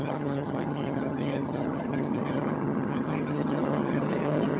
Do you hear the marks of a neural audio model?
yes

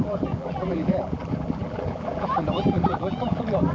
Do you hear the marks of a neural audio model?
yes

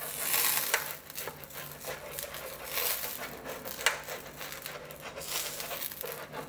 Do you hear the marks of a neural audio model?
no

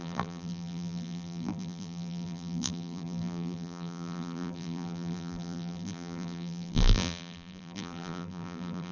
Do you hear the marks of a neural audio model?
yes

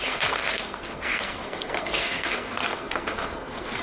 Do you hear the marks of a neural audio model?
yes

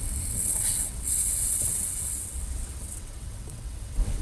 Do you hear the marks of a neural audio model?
yes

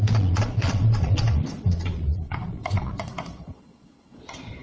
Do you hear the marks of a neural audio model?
yes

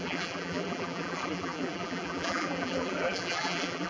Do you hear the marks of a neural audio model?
yes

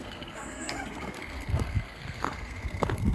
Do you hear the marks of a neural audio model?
yes